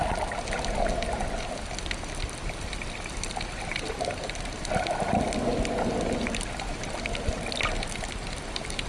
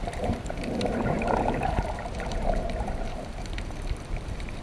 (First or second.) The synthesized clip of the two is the second